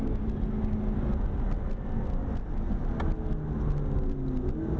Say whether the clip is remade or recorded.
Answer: recorded